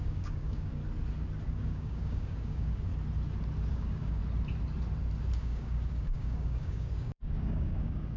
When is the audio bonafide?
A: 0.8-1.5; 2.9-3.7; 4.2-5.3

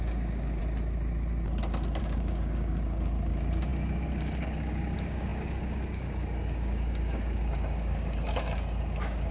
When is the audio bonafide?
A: 0.6-2.0

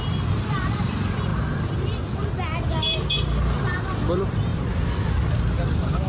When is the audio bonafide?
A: 0.0-6.1

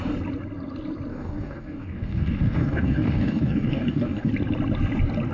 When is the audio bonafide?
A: 0.0-1.1; 4.3-5.3

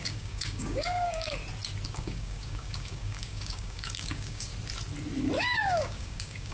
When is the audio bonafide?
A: 1.4-1.9; 4.5-5.4

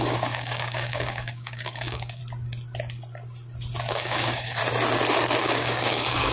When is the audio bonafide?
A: 2.2-3.9; 4.6-5.4

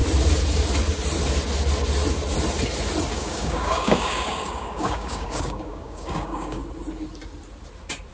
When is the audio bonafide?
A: 0.0-3.1; 6.6-8.1